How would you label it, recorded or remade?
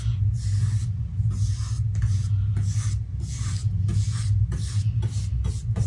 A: recorded